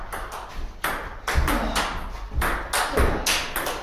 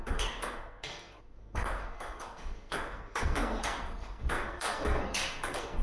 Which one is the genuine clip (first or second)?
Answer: first